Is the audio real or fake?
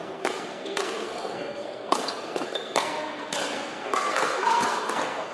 fake